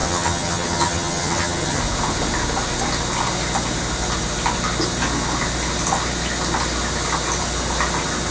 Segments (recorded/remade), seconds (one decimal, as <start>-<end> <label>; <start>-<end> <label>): 0.0-1.8 remade; 1.8-8.3 recorded

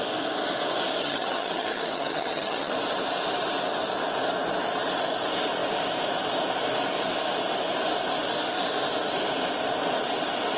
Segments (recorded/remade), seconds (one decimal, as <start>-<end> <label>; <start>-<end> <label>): 0.0-1.0 recorded; 1.0-2.7 remade; 2.7-10.6 recorded

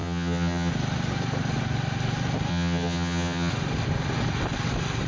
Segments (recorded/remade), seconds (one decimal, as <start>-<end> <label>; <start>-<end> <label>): 0.0-0.7 remade; 0.7-2.5 recorded; 2.5-3.5 remade; 3.5-5.1 recorded

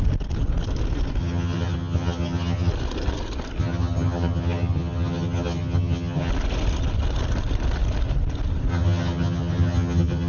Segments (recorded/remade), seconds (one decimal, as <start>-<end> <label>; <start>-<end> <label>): 0.0-1.2 recorded; 1.2-2.7 remade; 2.7-3.6 recorded; 3.6-6.3 remade; 6.3-8.7 recorded; 8.7-10.3 remade

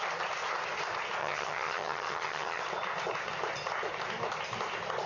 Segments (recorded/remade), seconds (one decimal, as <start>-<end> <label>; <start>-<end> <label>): 0.0-1.2 recorded; 1.2-2.6 remade; 2.6-5.1 recorded

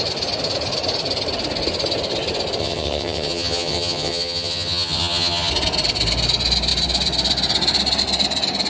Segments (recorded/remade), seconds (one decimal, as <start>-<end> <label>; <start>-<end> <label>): 0.0-2.6 recorded; 2.6-5.5 remade; 5.5-8.7 recorded